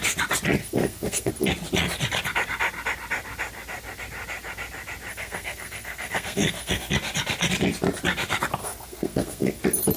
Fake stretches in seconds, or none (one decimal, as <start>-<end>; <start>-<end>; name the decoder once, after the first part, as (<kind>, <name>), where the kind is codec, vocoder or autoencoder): 0.6-1.3 (codec, SNAC); 5.1-6.9; 8.6-9.6